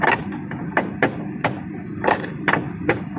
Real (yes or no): yes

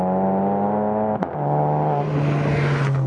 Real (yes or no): yes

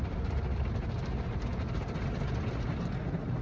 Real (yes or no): yes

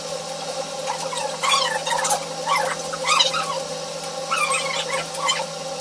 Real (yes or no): yes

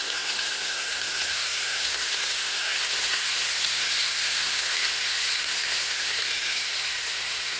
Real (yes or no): no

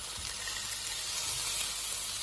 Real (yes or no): yes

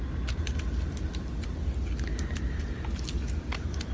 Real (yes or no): yes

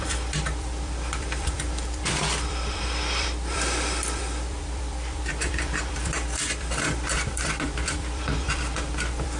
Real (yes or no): no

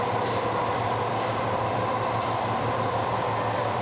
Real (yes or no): yes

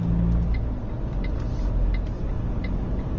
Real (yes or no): yes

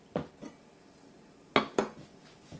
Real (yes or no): yes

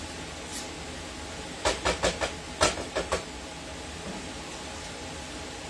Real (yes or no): yes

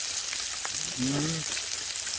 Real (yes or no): yes